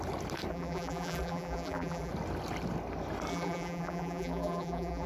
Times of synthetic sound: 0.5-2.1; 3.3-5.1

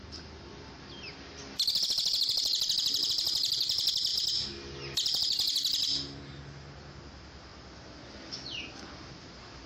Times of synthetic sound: none